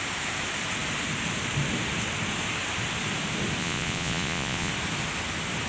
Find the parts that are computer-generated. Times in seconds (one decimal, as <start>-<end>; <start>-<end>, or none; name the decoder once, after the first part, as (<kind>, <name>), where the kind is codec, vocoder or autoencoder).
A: 3.6-4.7 (vocoder, Vocos)